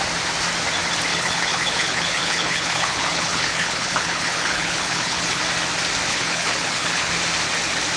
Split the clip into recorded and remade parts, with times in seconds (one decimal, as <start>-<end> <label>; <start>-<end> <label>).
0.0-1.1 recorded; 1.1-5.4 remade; 5.4-6.1 recorded; 6.1-7.1 remade; 7.1-8.0 recorded